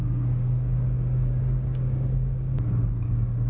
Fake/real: fake